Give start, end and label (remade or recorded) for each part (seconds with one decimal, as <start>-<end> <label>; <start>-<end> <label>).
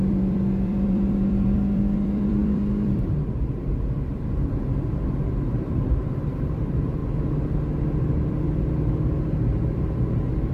0.0-7.0 remade; 7.0-10.5 recorded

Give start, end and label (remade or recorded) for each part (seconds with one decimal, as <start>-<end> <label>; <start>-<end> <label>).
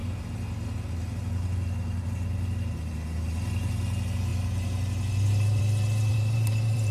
0.0-6.1 recorded; 6.1-6.9 remade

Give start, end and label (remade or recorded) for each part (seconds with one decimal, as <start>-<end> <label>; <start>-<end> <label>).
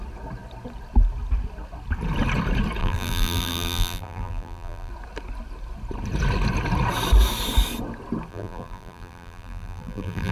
0.0-2.8 recorded; 2.8-4.9 remade; 4.9-8.3 recorded; 8.3-10.3 remade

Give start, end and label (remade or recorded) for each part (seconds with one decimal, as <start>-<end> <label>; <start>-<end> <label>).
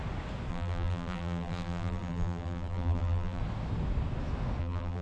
0.0-0.5 recorded; 0.5-3.4 remade; 3.4-4.6 recorded; 4.6-5.0 remade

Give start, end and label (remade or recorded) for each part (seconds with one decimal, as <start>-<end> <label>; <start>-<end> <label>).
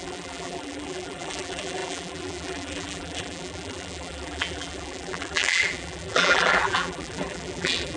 0.0-8.0 remade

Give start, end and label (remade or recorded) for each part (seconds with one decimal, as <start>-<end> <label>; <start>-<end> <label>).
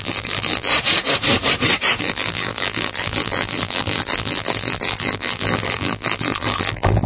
0.0-0.7 remade; 0.7-2.0 recorded; 2.0-7.1 remade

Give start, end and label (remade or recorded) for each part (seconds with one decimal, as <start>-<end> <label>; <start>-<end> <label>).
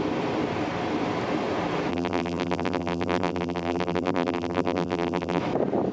0.0-1.9 recorded; 1.9-5.4 remade; 5.4-5.9 recorded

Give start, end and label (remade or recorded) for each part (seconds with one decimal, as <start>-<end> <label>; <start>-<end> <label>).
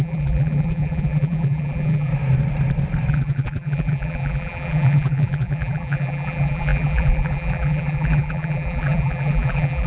0.0-2.1 remade; 2.1-3.1 recorded; 3.1-9.9 remade